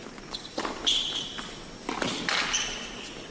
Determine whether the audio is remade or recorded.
recorded